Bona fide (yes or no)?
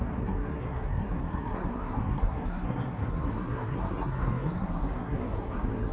no